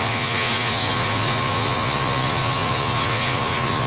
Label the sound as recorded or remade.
remade